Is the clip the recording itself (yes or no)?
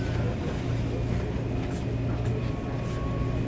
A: yes